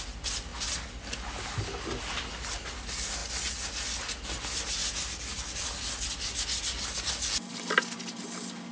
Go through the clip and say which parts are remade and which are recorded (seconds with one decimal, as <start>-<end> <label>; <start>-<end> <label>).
0.0-8.7 recorded